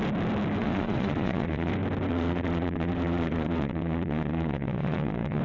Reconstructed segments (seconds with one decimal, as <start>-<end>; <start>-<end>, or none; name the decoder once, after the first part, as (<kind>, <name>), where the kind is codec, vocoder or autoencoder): 0.6-1.7 (vocoder, Vocos); 2.1-5.4